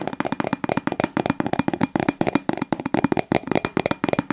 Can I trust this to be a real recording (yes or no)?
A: yes